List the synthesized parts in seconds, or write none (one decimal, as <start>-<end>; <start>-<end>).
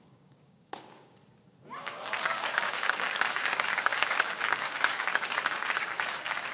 0.0-1.2; 1.8-6.5